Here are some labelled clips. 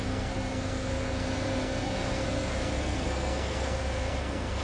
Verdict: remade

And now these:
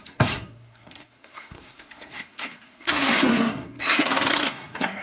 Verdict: remade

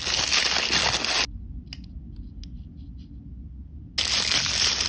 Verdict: recorded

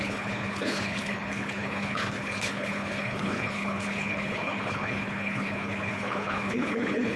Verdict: remade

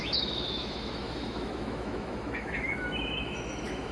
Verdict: remade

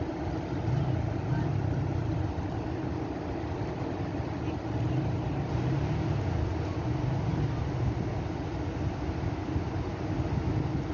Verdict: recorded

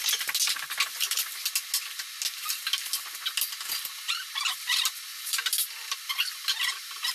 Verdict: recorded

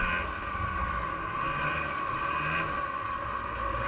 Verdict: recorded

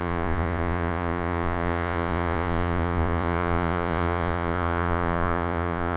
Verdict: remade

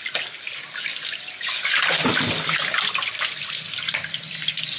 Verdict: recorded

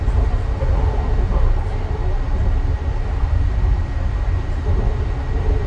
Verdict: recorded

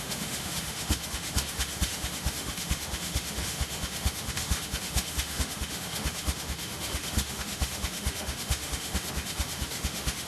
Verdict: remade